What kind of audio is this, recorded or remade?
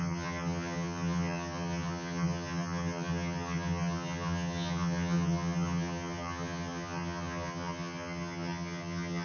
remade